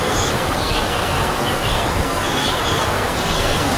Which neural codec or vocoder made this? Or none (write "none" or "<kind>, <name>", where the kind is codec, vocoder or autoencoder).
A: codec, SNAC